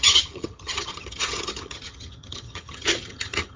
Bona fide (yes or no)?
no